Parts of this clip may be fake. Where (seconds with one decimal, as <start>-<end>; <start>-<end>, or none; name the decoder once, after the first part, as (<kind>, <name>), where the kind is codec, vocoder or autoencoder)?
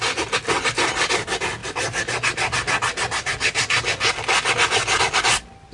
none